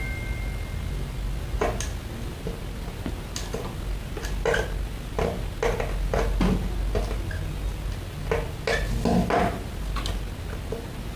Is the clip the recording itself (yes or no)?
yes